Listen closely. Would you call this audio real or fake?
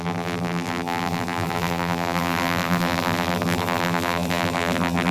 fake